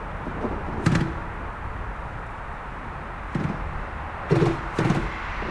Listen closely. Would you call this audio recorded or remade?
recorded